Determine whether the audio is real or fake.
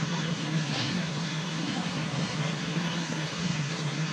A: fake